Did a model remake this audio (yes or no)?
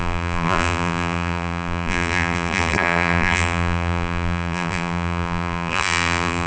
yes